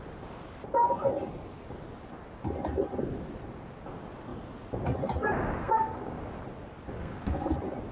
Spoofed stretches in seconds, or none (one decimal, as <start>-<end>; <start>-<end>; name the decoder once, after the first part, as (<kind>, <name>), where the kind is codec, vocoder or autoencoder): 5.6-6.2 (codec, SNAC); 7.0-7.5

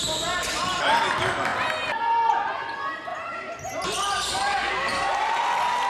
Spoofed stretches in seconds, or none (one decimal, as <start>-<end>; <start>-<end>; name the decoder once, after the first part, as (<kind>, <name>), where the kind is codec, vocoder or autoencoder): 3.1-5.4 (vocoder, BigVGAN v2)